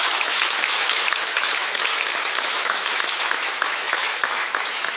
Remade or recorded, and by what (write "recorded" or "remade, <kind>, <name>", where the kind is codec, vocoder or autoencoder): remade, autoencoder, DAC-VAE